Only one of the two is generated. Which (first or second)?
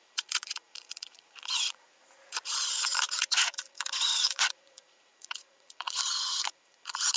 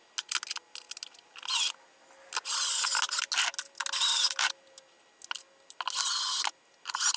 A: first